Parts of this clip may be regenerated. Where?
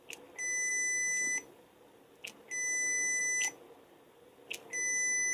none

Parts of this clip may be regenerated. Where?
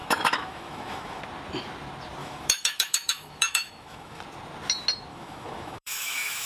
0.0-1.2; 2.2-4.2; 5.1-6.5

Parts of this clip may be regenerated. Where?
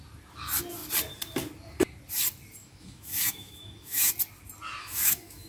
2.6-4.1; 4.8-5.5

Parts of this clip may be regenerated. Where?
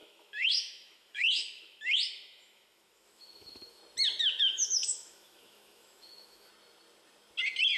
0.0-3.8; 4.4-6.5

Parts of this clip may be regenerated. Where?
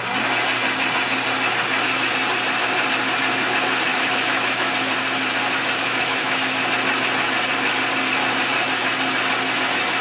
3.9-4.7; 5.8-6.5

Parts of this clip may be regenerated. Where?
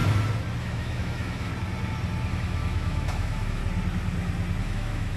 0.6-1.5; 2.3-3.6; 4.6-5.2